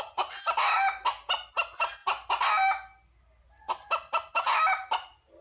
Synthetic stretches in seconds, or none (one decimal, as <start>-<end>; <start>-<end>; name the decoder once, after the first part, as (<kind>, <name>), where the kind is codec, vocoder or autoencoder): none